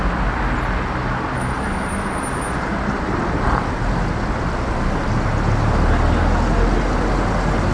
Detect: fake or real real